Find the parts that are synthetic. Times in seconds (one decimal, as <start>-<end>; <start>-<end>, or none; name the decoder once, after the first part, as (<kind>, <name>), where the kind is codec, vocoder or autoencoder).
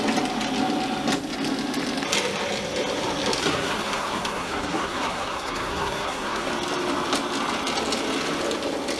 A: 3.4-6.5 (codec, SNAC)